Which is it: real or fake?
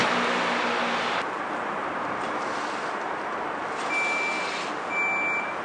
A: real